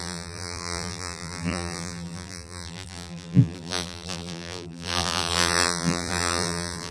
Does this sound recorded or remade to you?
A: remade